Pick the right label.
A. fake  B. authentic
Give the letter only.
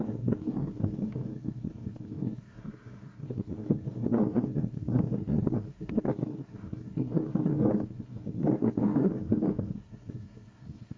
A